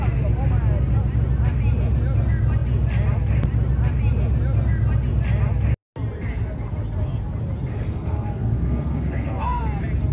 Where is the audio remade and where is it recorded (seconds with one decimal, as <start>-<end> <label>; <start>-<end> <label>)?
0.0-7.7 recorded; 7.7-9.6 remade; 9.6-10.1 recorded